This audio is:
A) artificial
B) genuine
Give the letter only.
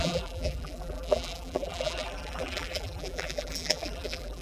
A